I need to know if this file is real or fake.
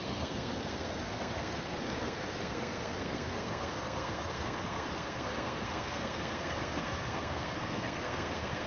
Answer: fake